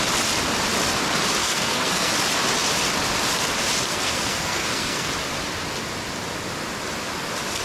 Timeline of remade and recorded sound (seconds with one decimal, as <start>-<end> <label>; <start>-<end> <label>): 0.0-1.4 recorded; 1.4-2.1 remade; 2.1-3.9 recorded; 3.9-5.1 remade; 5.1-7.6 recorded